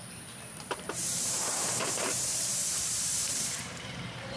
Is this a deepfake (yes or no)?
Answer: yes